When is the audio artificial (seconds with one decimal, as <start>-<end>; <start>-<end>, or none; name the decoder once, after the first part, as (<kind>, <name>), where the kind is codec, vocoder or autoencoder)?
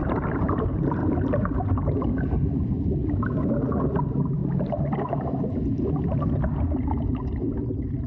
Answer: 0.0-3.0 (vocoder, BigVGAN v2); 4.0-8.1